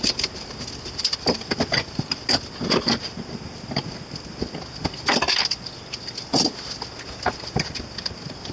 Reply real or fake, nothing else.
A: real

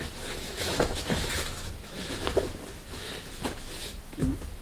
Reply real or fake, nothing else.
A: fake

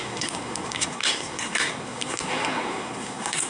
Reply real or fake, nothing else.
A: fake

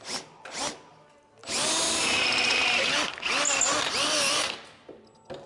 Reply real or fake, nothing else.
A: real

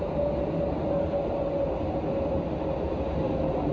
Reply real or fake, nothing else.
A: real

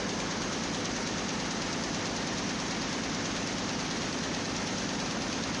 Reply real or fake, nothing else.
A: real